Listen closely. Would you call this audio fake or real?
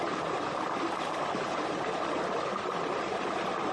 real